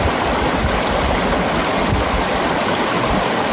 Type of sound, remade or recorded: recorded